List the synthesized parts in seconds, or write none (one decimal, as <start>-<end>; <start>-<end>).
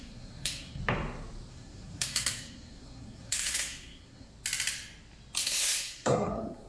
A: 0.0-0.8; 1.5-4.3; 5.4-6.7